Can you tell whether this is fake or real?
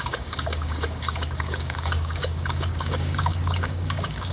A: fake